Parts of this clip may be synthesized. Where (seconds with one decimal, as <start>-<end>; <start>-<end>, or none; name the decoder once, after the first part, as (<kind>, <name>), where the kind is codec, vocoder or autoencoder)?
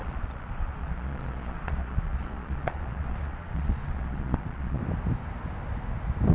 0.0-4.8 (vocoder, Vocos)